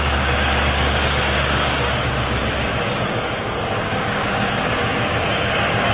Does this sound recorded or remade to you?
remade